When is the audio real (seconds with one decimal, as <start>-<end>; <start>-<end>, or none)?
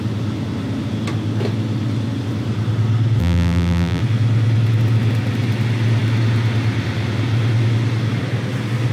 0.0-3.2; 4.0-8.9